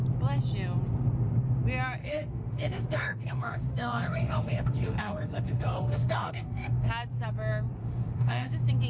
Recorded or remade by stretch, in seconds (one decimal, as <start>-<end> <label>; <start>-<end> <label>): 0.0-2.0 recorded; 2.0-6.9 remade; 6.9-7.8 recorded; 7.8-8.5 remade; 8.5-8.9 recorded